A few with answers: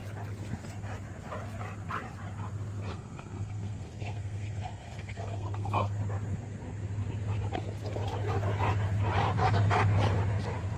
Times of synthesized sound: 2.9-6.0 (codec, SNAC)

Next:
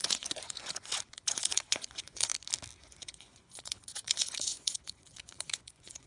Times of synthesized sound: 0.0-2.3 (vocoder, Vocos); 2.8-6.1

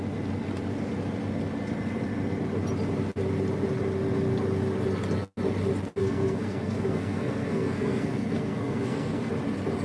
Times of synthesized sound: 6.0-9.3 (codec, SNAC)

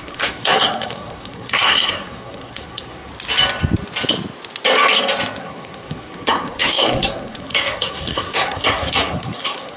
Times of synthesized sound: 0.0-3.1 (codec, SNAC); 5.4-9.8

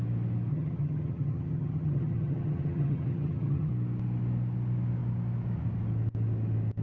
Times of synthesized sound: 0.5-3.7 (vocoder, HiFi-GAN)

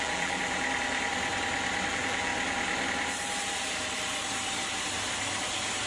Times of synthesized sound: 0.0-0.4 (vocoder, BigVGAN v2); 1.9-2.3

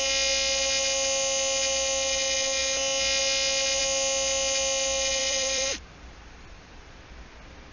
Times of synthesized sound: 5.2-7.0 (vocoder, BigVGAN v2)

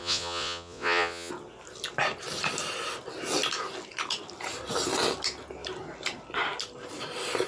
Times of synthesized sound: 0.0-1.3 (vocoder, Vocos)